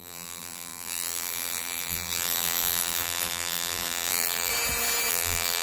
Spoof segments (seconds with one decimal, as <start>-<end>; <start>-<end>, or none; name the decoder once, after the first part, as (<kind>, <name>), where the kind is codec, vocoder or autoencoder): 0.0-4.5 (vocoder, BigVGAN v2); 5.1-5.6